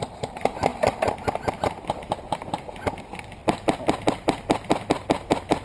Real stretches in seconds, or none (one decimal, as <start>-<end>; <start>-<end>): 0.0-5.6